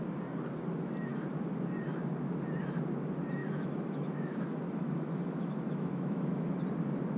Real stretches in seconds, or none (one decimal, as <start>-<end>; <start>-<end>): 0.0-3.4; 6.6-7.2

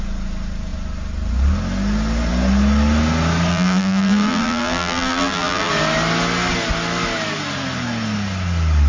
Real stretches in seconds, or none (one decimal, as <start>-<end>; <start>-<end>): 0.0-3.5; 5.7-8.9

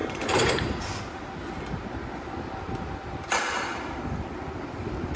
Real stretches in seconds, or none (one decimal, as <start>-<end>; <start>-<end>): 0.9-5.2